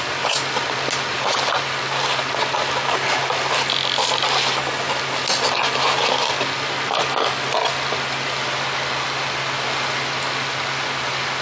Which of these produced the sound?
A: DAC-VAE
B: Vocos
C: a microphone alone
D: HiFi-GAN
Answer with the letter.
C